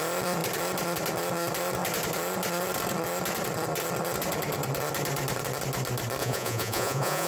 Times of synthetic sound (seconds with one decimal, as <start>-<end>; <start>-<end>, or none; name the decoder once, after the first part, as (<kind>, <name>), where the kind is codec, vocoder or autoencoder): 6.2-7.3 (vocoder, Vocos)